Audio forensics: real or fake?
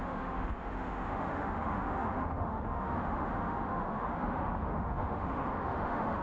fake